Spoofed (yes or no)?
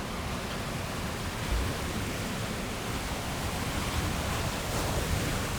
no